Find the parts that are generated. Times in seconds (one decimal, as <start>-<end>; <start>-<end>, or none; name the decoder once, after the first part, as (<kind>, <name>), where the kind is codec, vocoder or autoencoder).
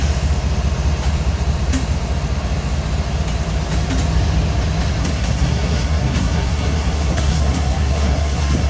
5.0-8.7 (codec, SNAC)